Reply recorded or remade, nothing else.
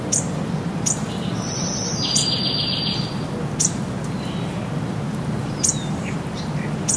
recorded